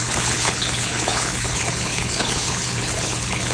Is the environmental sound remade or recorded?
remade